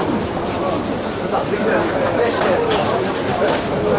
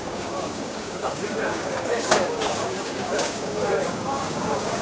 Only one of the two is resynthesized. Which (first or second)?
second